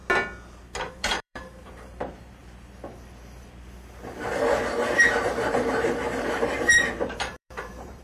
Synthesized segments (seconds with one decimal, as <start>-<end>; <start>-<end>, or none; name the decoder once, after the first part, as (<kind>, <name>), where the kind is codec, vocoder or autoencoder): 0.9-2.4 (vocoder, BigVGAN v2); 4.3-8.0